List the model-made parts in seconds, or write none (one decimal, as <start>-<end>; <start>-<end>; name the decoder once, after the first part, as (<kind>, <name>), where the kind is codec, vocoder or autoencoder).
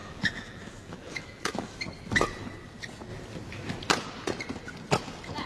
0.0-1.8 (autoencoder, DAC-VAE)